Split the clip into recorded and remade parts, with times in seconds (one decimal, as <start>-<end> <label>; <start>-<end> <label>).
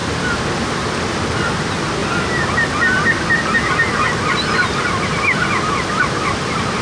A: 0.0-6.8 recorded